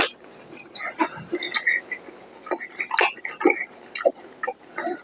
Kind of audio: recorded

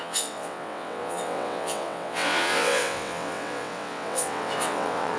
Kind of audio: remade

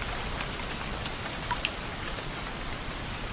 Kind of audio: remade